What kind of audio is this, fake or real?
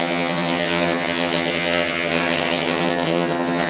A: fake